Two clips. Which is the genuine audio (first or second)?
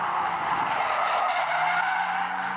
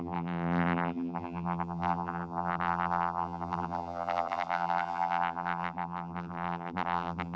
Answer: first